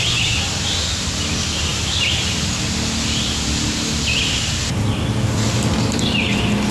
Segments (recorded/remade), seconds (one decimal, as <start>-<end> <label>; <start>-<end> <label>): 0.0-6.7 recorded